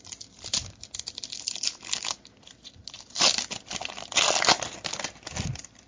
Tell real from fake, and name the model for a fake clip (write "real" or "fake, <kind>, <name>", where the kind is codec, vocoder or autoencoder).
real